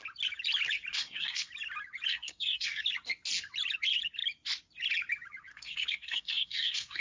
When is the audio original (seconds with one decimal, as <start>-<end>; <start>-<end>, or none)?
0.0-0.9; 1.5-2.1; 2.8-5.5